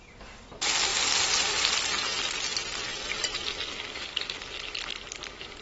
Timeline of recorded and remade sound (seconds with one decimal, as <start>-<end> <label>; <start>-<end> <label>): 0.0-5.6 recorded